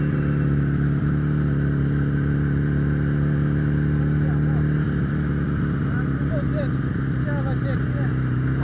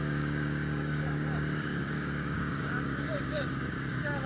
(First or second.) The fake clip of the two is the second